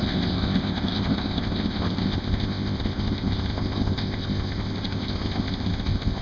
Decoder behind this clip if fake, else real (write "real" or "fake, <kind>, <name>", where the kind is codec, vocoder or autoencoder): fake, codec, ZipCodec